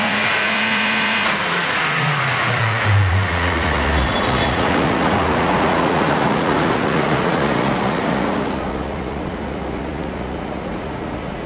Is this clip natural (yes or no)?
no